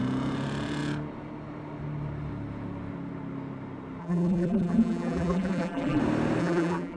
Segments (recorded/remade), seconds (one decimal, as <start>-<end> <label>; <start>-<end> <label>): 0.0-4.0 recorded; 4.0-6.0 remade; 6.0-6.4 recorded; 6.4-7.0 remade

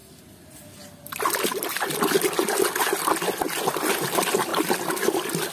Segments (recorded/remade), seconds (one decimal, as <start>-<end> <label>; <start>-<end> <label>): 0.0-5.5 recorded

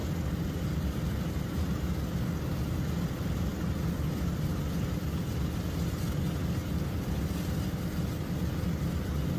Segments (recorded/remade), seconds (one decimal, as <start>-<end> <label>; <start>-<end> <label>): 0.0-9.4 recorded